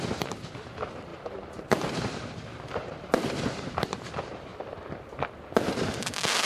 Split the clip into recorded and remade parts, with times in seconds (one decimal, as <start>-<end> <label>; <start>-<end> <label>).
0.0-4.5 remade; 4.5-6.5 recorded